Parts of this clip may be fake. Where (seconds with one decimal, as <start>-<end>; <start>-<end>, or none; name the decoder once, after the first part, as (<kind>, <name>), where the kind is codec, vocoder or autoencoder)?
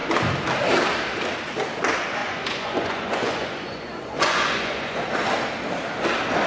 2.2-5.0 (vocoder, Vocos)